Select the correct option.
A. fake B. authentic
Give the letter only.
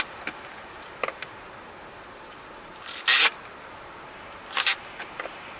B